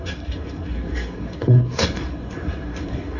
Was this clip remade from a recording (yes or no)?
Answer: yes